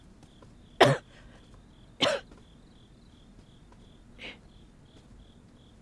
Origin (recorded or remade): recorded